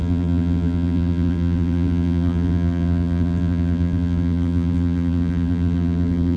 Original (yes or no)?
no